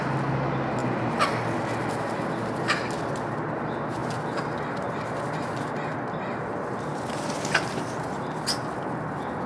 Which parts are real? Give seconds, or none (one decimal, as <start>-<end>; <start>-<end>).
0.0-9.5